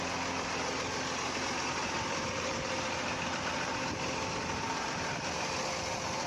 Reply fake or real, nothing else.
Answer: real